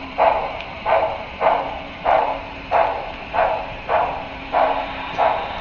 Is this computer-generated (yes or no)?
yes